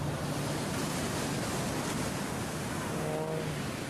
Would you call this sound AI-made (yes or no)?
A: no